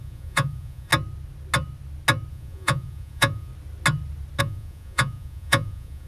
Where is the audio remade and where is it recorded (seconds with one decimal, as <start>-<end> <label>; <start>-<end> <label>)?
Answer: 0.0-0.9 remade; 0.9-2.3 recorded; 2.3-3.5 remade; 3.5-4.4 recorded; 4.4-6.1 remade